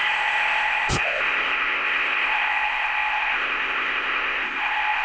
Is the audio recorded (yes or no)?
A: no